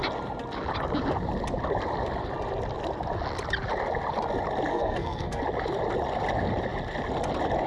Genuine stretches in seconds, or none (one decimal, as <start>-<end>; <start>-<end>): 0.0-4.7; 5.4-7.7